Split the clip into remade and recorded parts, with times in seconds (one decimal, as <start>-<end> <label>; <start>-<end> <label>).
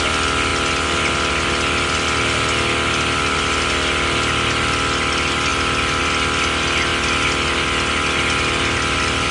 0.0-9.3 recorded